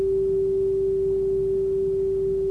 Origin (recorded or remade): recorded